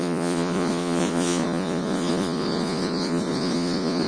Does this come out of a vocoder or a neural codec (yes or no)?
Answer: yes